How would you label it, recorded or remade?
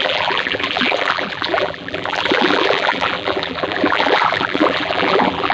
remade